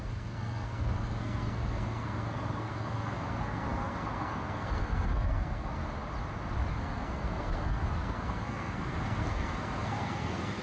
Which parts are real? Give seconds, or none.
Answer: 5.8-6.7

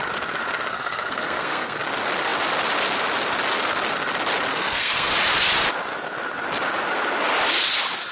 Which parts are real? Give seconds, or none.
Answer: 0.0-0.7; 1.8-4.5; 5.1-8.1

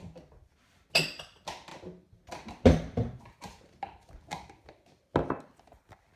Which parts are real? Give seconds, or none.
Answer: 0.0-6.2

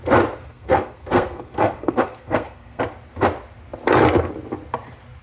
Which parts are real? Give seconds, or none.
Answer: 0.0-0.4; 2.8-5.2